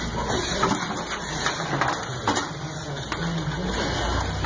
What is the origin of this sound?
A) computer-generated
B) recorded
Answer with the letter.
B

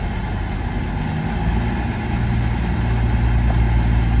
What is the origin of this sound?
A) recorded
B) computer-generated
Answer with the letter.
A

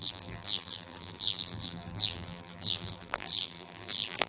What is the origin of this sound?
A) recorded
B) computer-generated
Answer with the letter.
B